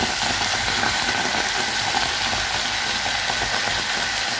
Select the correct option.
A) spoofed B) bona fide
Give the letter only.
B